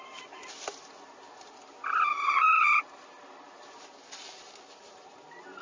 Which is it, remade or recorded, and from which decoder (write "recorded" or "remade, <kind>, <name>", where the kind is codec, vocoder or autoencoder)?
recorded